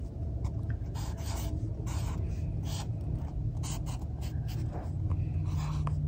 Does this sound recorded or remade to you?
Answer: recorded